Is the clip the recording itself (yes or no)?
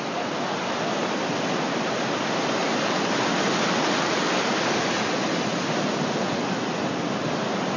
yes